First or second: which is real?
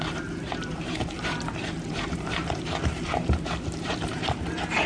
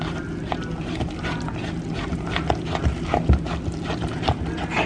second